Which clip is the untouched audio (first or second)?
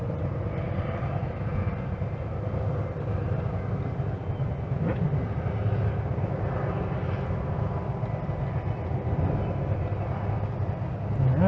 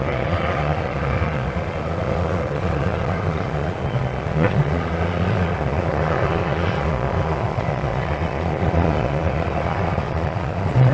first